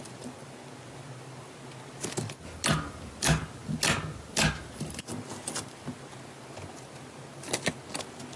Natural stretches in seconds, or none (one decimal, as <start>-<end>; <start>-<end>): 0.0-8.4